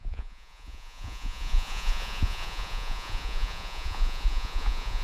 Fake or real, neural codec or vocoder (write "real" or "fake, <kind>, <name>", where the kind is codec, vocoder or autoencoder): fake, vocoder, Vocos